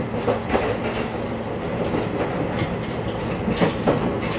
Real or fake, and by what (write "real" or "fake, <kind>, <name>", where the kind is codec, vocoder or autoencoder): real